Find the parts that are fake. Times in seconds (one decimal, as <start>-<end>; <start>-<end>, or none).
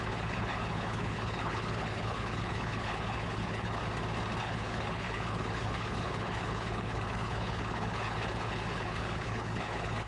0.0-3.8; 4.4-10.1